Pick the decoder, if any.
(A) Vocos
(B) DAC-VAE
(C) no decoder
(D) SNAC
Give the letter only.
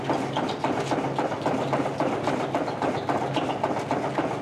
C